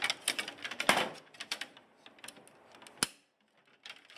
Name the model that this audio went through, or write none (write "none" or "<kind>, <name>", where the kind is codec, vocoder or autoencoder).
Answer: none